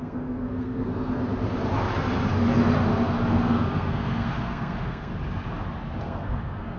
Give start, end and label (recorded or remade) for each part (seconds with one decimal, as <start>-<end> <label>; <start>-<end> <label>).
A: 0.0-1.2 remade; 1.2-3.3 recorded; 3.3-5.1 remade; 5.1-6.0 recorded; 6.0-6.8 remade